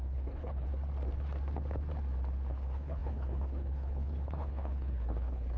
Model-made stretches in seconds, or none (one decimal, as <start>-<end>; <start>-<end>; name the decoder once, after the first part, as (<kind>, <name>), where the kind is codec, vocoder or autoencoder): 0.0-0.7 (codec, HILCodec); 2.5-5.6